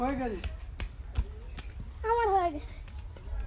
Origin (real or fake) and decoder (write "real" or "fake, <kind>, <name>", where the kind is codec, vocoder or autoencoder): real